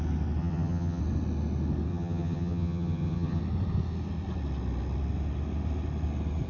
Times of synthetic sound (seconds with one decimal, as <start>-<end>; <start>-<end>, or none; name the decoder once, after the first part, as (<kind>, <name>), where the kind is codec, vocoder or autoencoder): 0.4-1.0 (vocoder, HiFi-GAN); 1.9-3.4